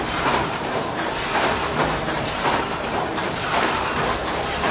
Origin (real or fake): fake